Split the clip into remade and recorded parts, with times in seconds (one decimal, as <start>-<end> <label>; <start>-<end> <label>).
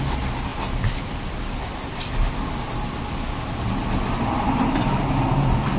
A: 0.0-5.8 recorded